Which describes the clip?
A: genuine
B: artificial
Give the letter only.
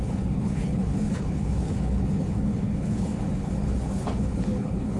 B